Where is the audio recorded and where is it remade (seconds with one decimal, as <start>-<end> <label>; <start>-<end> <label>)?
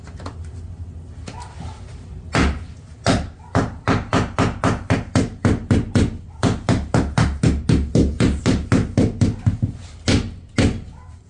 0.0-11.3 recorded